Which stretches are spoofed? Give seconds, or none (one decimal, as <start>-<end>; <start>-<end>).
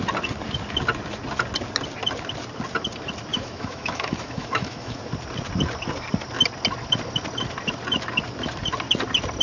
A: 3.3-5.0